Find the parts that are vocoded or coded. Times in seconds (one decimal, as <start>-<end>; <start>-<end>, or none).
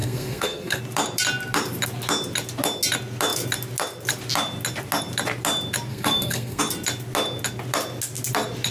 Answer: 0.0-0.8; 5.9-6.6